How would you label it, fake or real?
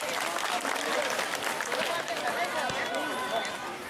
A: fake